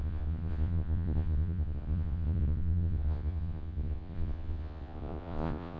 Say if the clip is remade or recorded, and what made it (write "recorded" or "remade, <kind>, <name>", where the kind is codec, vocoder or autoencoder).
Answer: remade, vocoder, Vocos